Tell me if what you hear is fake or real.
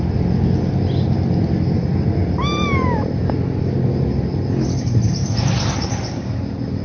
real